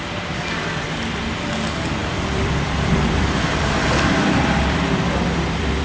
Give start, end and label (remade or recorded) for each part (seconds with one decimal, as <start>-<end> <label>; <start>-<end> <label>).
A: 0.0-2.0 recorded; 2.0-5.8 remade